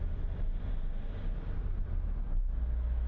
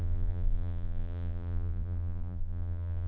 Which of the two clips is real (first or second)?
first